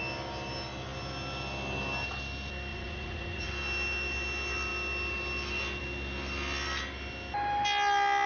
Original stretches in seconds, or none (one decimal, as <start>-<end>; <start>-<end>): 0.0-2.7; 3.5-8.3